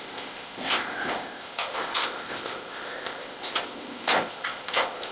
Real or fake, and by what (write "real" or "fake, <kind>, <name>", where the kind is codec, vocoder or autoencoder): fake, codec, ZipCodec